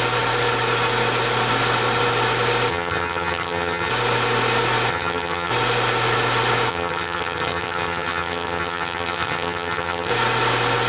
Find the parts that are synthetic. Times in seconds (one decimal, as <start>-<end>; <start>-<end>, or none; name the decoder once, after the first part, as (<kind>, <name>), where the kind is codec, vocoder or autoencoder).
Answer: 2.7-3.9 (vocoder, HiFi-GAN); 4.9-5.5; 6.7-10.1